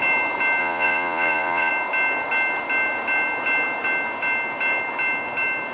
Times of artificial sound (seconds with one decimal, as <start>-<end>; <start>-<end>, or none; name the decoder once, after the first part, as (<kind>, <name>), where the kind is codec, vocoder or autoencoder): 0.6-1.7 (vocoder, Vocos)